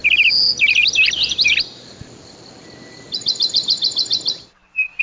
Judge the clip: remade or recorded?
remade